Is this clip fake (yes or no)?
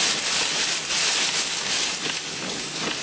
no